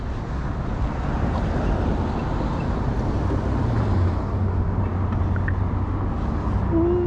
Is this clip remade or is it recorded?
recorded